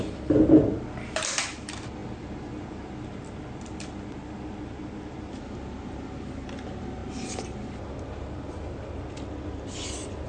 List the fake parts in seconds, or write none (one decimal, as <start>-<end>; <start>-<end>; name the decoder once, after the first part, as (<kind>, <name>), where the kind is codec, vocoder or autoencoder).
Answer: none